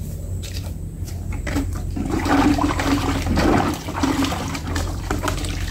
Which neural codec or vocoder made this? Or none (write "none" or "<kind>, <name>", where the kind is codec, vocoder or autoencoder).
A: vocoder, BigVGAN v2